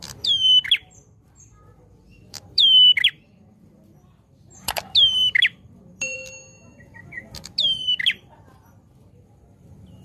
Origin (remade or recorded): remade